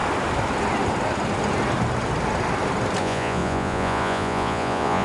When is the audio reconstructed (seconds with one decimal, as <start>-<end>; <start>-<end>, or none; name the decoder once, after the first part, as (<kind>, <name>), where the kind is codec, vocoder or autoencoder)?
3.0-5.0 (vocoder, Vocos)